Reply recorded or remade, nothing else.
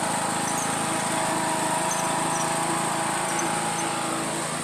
recorded